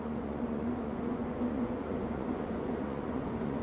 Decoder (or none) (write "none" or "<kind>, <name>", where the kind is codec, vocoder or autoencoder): vocoder, Vocos